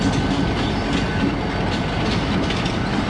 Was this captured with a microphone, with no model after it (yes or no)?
yes